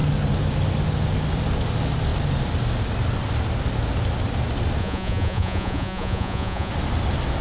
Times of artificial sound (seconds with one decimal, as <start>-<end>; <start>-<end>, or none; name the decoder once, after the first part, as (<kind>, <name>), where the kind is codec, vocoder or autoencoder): 4.8-6.7 (vocoder, Vocos)